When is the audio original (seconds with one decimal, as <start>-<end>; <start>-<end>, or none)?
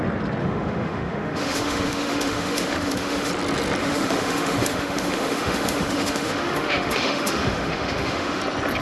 0.0-0.4; 3.3-3.8; 8.4-8.8